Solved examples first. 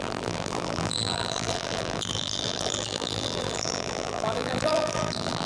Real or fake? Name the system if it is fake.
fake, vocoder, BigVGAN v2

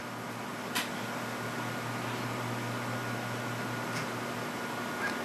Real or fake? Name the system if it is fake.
real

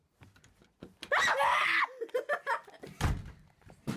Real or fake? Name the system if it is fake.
real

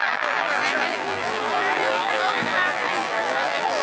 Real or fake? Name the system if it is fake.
fake, vocoder, BigVGAN v2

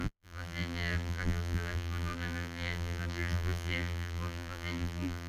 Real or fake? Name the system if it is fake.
fake, vocoder, BigVGAN v2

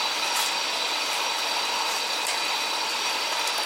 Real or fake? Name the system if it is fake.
real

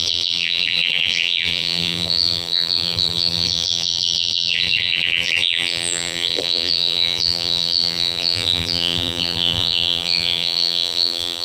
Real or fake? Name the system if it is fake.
fake, vocoder, BigVGAN v2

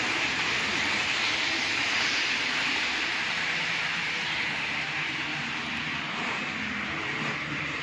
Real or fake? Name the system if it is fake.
fake, vocoder, BigVGAN v2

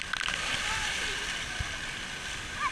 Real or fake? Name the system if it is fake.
real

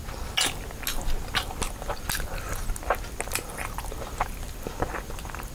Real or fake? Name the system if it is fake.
real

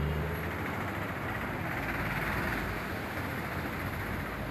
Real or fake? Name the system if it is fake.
real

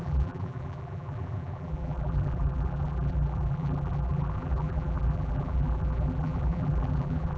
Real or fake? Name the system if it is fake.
fake, vocoder, BigVGAN v2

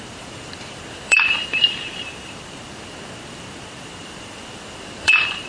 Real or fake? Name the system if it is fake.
fake, vocoder, BigVGAN v2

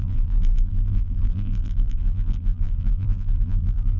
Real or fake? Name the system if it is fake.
fake, vocoder, BigVGAN v2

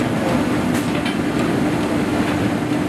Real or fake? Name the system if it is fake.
real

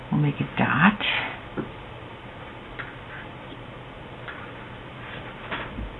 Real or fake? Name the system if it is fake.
fake, vocoder, BigVGAN v2